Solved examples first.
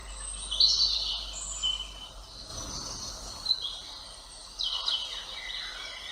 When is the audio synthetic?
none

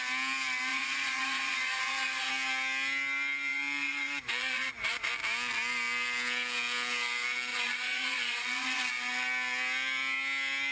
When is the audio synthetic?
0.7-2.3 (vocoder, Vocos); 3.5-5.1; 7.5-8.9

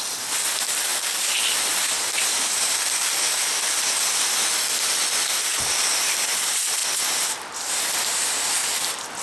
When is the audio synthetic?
none

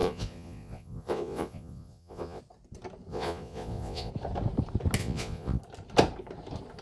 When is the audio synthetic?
0.0-2.4 (vocoder, Vocos); 3.1-4.1; 5.0-5.6